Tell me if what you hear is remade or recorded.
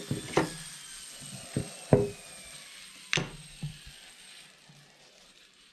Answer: recorded